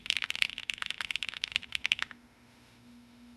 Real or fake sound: fake